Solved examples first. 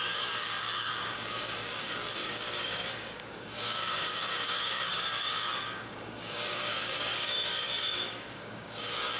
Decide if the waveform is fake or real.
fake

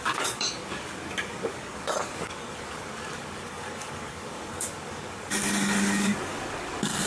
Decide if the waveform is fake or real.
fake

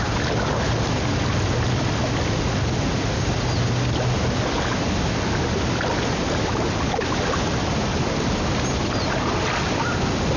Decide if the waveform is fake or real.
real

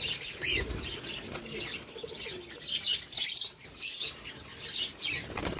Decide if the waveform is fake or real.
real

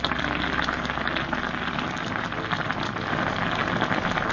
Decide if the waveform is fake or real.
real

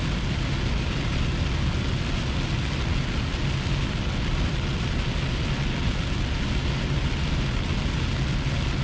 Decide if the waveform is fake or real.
real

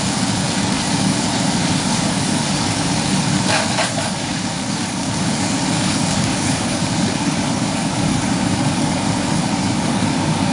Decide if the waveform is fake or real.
fake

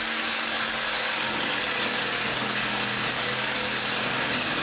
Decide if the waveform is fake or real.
fake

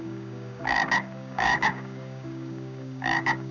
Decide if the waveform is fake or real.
fake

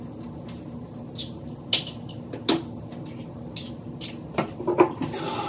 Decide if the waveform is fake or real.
real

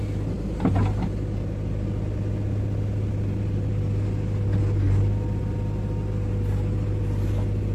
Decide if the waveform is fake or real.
real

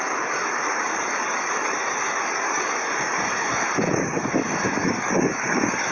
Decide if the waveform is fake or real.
fake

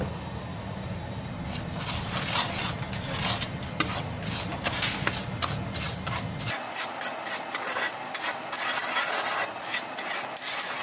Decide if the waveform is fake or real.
real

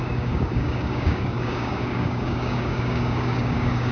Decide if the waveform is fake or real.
fake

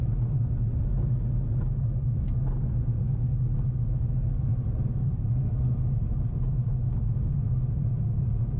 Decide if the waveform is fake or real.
real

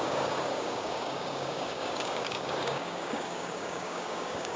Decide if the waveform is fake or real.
fake